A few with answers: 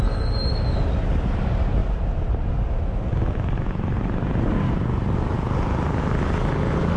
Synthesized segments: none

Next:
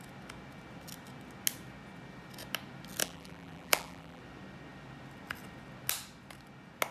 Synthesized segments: 3.0-4.2 (vocoder, BigVGAN v2)